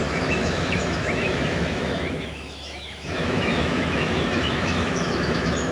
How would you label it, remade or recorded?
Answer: remade